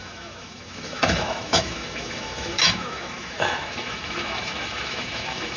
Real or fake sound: fake